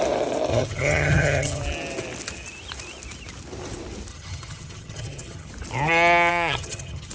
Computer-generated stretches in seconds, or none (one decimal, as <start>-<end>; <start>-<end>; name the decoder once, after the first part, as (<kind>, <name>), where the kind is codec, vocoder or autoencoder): 0.5-1.6 (vocoder, HiFi-GAN); 4.1-5.5; 6.3-7.1